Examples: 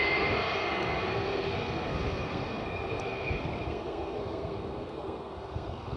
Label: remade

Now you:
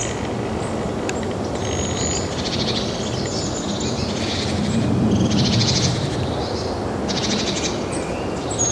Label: recorded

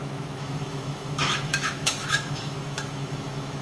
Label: remade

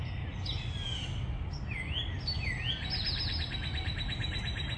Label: recorded